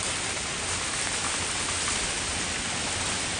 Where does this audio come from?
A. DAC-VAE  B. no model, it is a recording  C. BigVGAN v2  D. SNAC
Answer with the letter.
B